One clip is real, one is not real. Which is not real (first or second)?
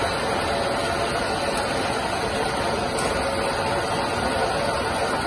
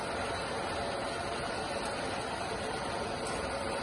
second